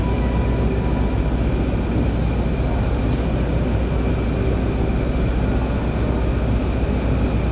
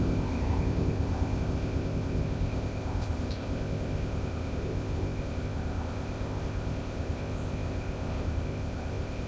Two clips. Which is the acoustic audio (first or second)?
first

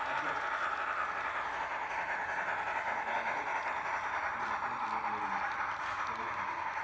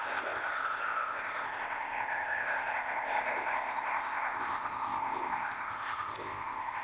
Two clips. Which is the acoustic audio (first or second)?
first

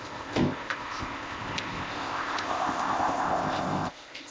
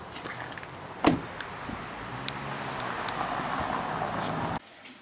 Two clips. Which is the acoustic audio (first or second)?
second